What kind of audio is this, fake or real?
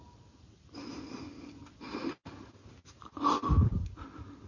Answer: real